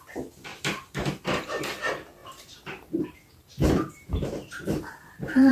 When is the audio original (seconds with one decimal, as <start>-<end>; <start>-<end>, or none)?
0.0-0.5; 1.6-2.2